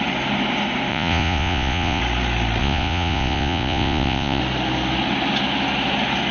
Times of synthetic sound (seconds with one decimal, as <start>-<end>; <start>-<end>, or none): 0.9-2.0; 2.6-4.4